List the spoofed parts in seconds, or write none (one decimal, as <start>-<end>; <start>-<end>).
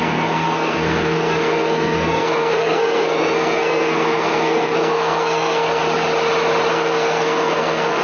0.0-5.8; 6.7-8.0